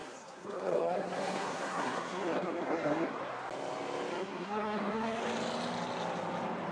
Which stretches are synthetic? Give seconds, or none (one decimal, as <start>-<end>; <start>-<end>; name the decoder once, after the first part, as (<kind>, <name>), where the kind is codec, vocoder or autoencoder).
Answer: 0.0-3.2 (codec, SNAC); 4.1-5.2